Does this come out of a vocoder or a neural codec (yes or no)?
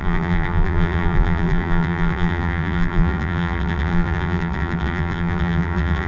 yes